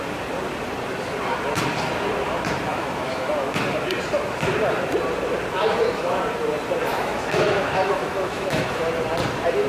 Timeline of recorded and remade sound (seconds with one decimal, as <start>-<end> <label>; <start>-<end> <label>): 0.0-2.7 recorded; 2.7-3.3 remade; 3.3-5.6 recorded; 5.6-6.2 remade; 6.2-6.9 recorded; 6.9-8.9 remade; 8.9-9.7 recorded